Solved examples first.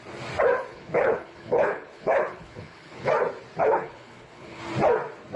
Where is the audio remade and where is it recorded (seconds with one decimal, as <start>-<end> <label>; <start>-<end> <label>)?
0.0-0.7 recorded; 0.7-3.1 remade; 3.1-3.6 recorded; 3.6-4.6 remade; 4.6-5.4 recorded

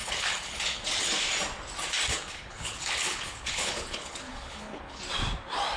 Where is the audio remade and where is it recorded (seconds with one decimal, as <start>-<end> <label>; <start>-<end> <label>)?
0.0-0.8 remade; 0.8-2.1 recorded; 2.1-5.0 remade; 5.0-5.8 recorded

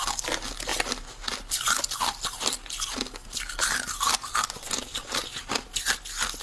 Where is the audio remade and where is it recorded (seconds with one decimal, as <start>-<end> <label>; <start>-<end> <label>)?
0.0-6.4 recorded

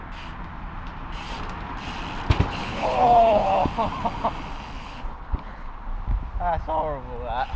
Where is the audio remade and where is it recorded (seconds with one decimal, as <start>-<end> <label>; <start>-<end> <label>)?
0.0-2.6 recorded; 2.6-3.6 remade; 3.6-4.8 recorded; 4.8-5.7 remade; 5.7-7.6 recorded

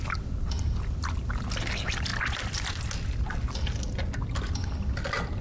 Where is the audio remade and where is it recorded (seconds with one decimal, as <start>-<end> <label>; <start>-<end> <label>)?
0.0-5.4 recorded

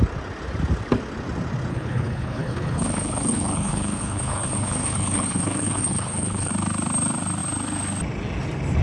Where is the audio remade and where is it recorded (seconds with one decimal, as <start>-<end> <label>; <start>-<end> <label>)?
0.0-1.7 recorded; 1.7-6.5 remade; 6.5-8.8 recorded